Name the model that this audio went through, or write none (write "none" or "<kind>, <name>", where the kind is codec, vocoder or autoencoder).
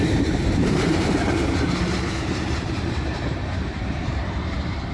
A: vocoder, BigVGAN v2